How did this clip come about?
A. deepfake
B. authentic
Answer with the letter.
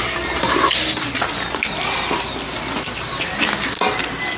B